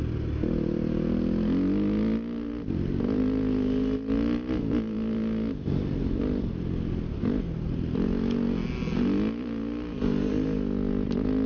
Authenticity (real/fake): real